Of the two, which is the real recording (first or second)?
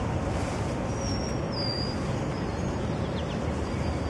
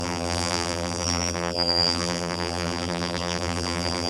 first